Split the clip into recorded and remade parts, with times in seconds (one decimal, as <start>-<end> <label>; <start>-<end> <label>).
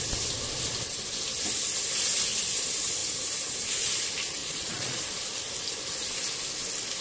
0.0-4.4 recorded; 4.4-5.0 remade; 5.0-7.0 recorded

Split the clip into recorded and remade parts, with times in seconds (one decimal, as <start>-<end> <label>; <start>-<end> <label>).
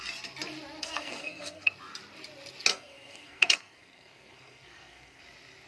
0.0-0.8 recorded; 0.8-1.7 remade; 1.7-2.7 recorded; 2.7-5.2 remade; 5.2-5.7 recorded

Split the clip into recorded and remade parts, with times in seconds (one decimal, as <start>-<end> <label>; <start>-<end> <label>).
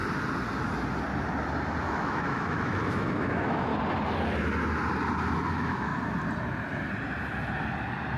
0.0-1.8 recorded; 1.8-3.7 remade; 3.7-5.5 recorded; 5.5-5.9 remade; 5.9-8.2 recorded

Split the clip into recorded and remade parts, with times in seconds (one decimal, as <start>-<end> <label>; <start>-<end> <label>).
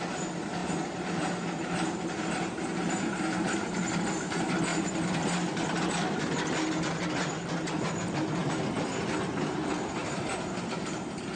0.0-0.6 recorded; 0.6-4.1 remade; 4.1-4.7 recorded; 4.7-6.2 remade; 6.2-10.0 recorded; 10.0-11.4 remade